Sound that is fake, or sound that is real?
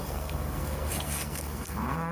fake